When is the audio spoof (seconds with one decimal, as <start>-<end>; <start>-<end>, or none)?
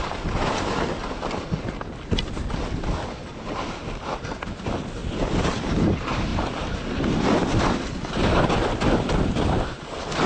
5.0-5.6; 6.3-7.5